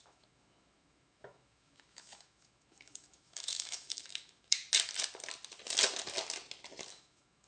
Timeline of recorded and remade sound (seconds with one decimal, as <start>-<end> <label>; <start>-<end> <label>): 0.0-4.6 remade; 4.6-6.9 recorded; 6.9-7.5 remade